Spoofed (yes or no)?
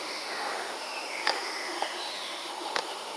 yes